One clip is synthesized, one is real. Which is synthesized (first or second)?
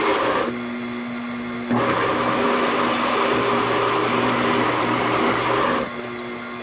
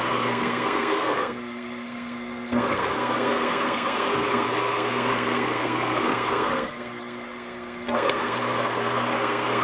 second